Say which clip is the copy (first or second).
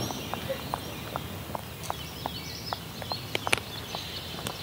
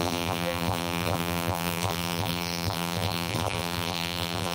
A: second